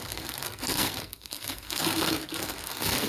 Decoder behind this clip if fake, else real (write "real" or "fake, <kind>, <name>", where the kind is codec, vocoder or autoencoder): fake, codec, SNAC